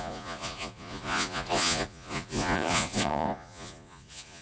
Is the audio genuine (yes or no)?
no